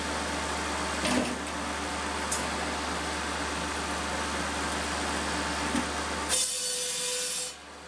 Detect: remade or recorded recorded